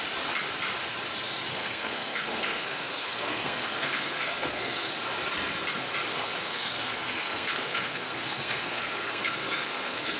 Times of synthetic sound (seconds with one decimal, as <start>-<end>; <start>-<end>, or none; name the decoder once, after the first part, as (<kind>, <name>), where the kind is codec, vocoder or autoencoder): 1.5-4.9 (codec, SNAC); 6.1-10.2